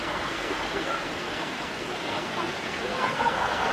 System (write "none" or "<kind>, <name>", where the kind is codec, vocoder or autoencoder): codec, SNAC